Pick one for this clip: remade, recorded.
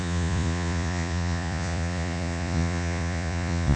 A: remade